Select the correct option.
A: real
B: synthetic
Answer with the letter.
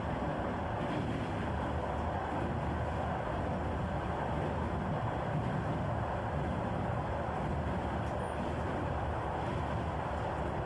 A